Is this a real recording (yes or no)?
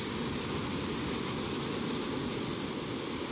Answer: yes